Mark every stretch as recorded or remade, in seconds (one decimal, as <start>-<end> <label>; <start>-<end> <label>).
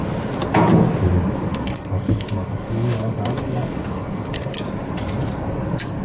0.0-1.5 recorded; 1.5-4.5 remade; 4.5-6.0 recorded